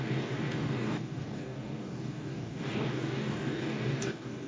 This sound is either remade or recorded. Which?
remade